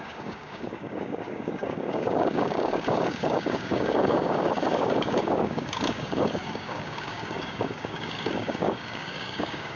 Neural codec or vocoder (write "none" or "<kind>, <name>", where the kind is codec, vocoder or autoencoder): codec, DAC